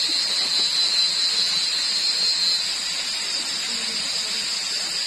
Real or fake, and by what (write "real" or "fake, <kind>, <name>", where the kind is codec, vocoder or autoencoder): real